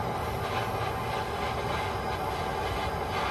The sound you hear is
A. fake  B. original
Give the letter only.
B